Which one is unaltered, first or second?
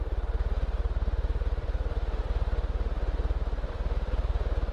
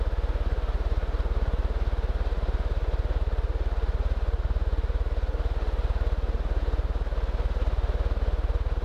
second